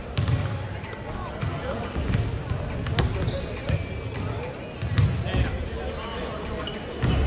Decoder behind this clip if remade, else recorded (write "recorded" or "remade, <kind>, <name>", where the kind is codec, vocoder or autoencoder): recorded